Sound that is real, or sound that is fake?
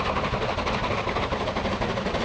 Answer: real